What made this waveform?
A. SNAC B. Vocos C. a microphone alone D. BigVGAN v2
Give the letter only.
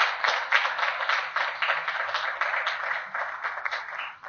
C